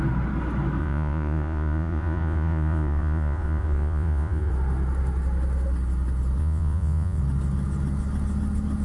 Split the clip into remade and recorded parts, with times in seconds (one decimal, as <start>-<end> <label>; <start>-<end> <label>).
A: 0.0-0.8 recorded; 0.8-4.5 remade; 4.5-6.4 recorded; 6.4-7.2 remade; 7.2-8.8 recorded